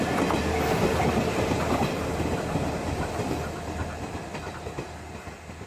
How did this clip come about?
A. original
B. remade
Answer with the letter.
A